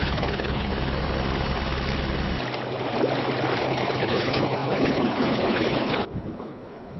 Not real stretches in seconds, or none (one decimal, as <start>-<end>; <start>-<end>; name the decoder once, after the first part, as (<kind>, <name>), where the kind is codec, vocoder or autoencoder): 0.0-0.7 (codec, HILCodec); 3.6-7.0

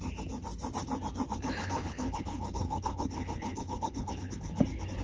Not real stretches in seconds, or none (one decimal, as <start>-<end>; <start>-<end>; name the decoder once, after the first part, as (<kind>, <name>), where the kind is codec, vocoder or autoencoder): 1.6-4.6 (codec, HILCodec)

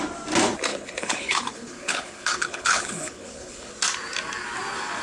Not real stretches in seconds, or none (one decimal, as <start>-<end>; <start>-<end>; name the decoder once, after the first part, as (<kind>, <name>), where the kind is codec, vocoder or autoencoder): 0.7-3.7 (codec, HILCodec)

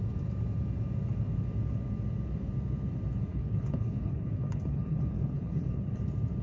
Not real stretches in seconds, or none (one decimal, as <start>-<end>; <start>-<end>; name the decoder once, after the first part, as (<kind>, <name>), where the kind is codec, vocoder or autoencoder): 3.3-6.0 (codec, HILCodec)

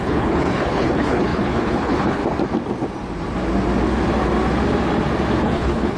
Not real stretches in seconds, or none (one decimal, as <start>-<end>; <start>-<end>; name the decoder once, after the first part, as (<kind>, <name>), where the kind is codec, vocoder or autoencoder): 0.0-2.2 (codec, HILCodec); 5.4-6.0

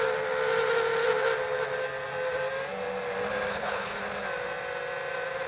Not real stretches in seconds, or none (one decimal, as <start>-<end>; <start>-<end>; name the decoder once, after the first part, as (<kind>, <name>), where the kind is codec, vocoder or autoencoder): 3.5-4.0 (codec, HILCodec)

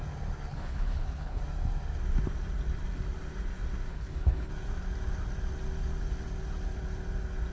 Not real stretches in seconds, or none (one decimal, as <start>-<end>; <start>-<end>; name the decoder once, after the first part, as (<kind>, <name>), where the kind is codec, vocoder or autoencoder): 0.5-1.4 (codec, HILCodec); 3.9-4.5